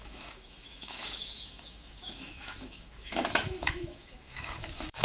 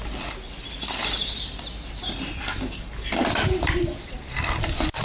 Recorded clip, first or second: second